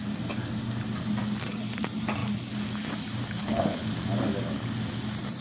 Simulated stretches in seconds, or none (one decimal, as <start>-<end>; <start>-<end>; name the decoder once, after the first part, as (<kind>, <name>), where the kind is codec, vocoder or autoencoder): 3.4-3.9 (codec, HILCodec)